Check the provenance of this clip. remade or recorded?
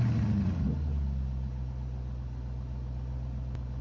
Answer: recorded